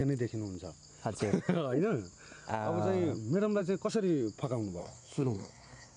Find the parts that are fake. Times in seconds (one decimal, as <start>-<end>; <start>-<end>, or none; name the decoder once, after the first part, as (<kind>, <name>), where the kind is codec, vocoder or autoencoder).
4.8-6.0 (codec, SNAC)